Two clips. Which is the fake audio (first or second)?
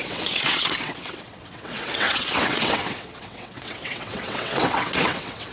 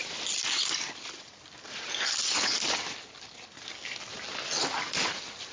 first